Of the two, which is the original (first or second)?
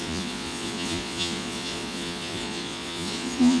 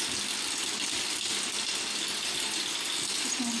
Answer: second